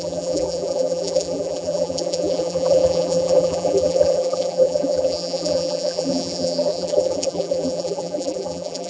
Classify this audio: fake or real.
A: fake